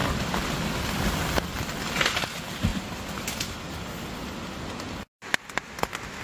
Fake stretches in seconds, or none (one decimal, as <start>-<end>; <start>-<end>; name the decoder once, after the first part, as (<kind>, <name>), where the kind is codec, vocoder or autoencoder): none